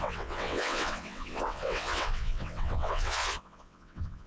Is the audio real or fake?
fake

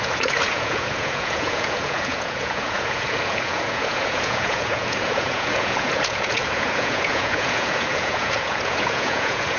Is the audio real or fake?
fake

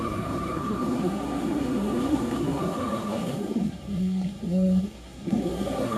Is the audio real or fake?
fake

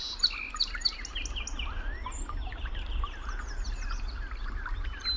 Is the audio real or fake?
real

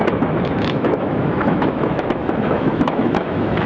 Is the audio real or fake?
fake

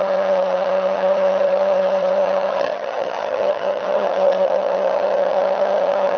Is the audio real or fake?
fake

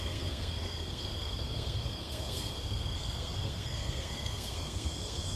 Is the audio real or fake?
fake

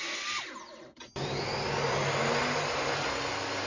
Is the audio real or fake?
real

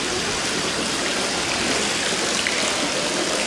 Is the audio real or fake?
real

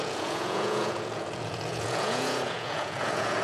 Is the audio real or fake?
fake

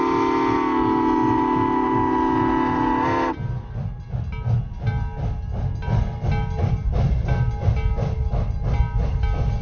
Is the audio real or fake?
real